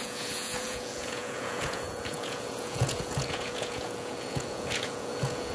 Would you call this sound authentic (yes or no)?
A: no